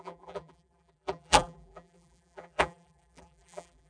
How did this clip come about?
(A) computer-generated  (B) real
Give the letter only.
A